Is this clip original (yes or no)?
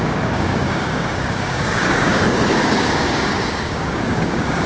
no